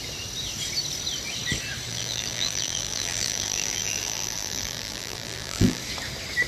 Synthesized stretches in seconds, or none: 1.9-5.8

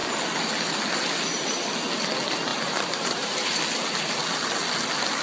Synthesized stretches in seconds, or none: 2.5-3.6